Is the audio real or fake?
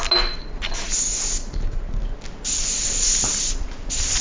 real